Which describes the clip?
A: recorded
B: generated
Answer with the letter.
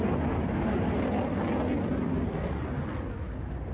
A